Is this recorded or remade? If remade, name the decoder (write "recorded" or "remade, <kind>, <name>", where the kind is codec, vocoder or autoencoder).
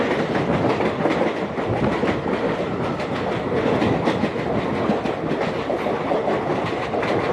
recorded